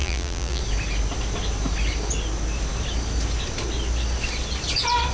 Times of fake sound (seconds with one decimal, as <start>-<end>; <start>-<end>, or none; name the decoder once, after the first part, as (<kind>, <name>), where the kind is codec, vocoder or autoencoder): 0.0-0.6 (vocoder, BigVGAN v2)